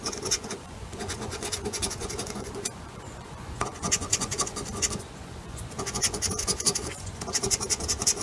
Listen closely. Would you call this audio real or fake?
fake